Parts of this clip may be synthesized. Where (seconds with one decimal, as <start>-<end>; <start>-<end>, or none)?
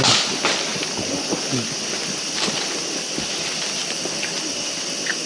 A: none